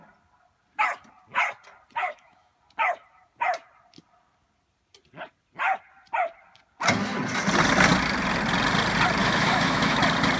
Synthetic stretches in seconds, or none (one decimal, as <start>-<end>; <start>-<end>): 2.0-2.5; 9.2-10.0